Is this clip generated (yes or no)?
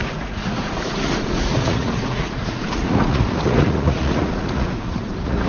yes